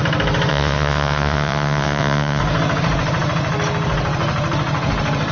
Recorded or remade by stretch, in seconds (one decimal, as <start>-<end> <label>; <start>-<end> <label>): 0.0-0.5 recorded; 0.5-2.4 remade; 2.4-5.3 recorded